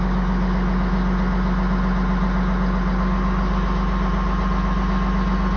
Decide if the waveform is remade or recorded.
recorded